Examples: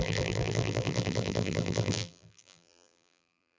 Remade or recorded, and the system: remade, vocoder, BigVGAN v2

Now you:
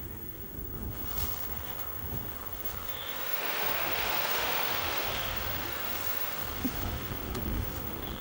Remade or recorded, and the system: remade, autoencoder, DAC-VAE